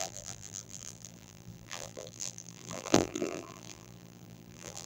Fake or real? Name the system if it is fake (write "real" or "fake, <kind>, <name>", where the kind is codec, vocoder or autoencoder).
fake, vocoder, BigVGAN v2